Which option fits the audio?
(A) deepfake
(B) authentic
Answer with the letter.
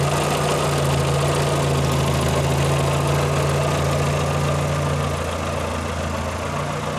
B